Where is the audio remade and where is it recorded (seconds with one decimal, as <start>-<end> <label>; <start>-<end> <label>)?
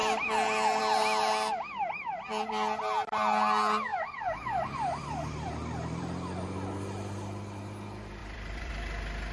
0.0-3.9 recorded; 3.9-6.0 remade; 6.0-8.2 recorded; 8.2-8.7 remade; 8.7-9.3 recorded